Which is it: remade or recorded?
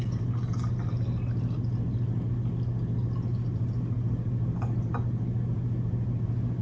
recorded